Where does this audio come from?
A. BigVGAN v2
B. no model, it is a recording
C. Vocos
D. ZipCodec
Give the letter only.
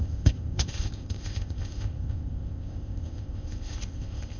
D